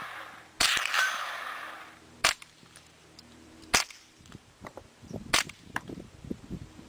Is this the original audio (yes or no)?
no